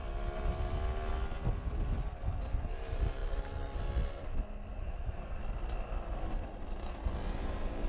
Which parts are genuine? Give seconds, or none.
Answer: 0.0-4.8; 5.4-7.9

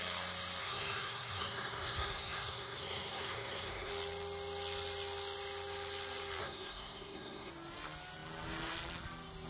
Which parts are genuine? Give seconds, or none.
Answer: 0.0-0.6; 3.9-6.4; 7.5-9.5

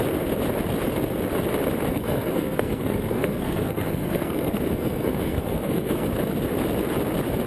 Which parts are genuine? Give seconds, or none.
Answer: 0.0-1.9; 6.1-7.5

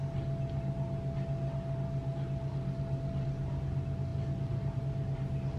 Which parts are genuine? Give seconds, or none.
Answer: 0.0-5.6

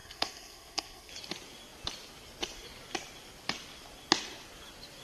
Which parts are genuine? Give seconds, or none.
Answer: 1.1-5.0